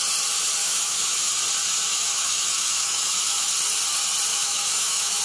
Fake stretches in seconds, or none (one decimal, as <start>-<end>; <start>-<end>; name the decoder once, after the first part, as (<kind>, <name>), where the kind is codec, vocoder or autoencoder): 0.6-1.3 (autoencoder, DAC-VAE); 1.9-3.5; 4.3-5.2

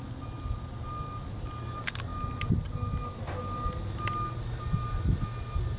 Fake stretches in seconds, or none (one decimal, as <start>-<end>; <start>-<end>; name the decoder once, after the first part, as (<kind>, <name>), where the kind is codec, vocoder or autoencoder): none

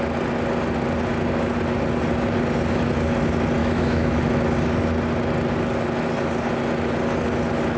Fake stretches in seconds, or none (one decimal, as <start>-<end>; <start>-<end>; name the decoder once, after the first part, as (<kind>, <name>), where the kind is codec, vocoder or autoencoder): 3.6-4.2 (autoencoder, DAC-VAE)